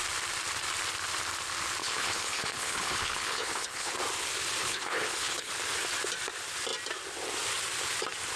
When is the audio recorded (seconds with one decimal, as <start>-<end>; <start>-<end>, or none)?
0.0-1.8; 3.9-4.6; 5.5-8.4

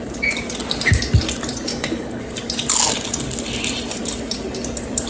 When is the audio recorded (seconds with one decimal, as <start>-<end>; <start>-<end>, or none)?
0.0-1.7; 2.2-5.1

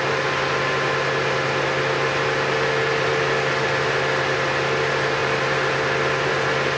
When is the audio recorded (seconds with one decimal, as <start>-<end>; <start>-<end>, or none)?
0.0-6.8

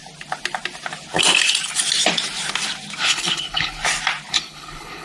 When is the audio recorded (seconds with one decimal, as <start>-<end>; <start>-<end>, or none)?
0.0-3.0; 3.8-4.3

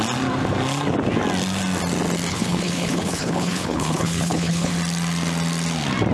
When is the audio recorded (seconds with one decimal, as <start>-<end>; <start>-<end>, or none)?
0.0-2.3; 4.7-6.1

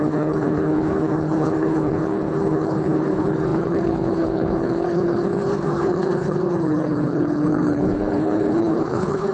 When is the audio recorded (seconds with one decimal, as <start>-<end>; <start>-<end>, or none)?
none